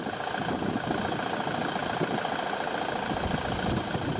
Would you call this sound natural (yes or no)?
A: yes